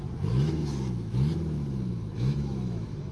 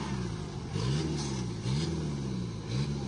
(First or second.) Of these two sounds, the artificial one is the first